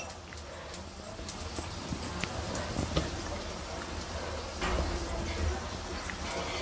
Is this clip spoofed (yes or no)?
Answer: no